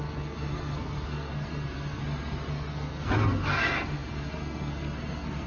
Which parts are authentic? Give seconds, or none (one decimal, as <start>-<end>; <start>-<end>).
2.0-2.5